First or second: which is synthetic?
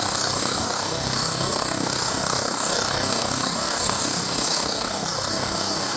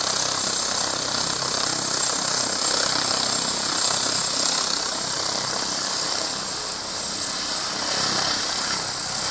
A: first